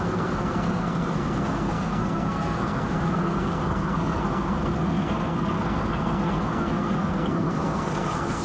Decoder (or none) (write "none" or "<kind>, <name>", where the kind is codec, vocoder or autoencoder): codec, SNAC